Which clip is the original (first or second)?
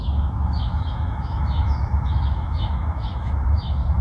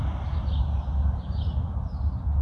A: second